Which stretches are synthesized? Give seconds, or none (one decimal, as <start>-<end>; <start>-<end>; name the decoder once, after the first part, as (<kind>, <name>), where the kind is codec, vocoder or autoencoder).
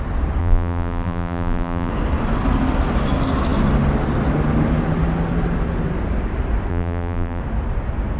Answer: 0.4-1.9 (vocoder, BigVGAN v2); 6.7-7.4